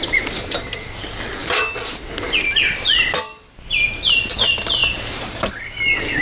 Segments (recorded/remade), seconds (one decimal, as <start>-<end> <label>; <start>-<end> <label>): 0.0-6.2 recorded